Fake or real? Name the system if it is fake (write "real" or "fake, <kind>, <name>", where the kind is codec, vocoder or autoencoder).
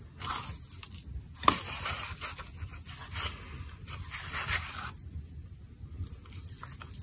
real